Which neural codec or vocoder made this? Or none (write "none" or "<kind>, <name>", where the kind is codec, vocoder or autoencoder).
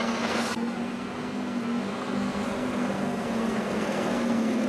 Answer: codec, SNAC